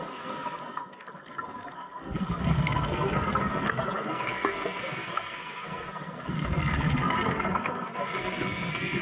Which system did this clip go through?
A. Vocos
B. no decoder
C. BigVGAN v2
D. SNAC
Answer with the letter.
D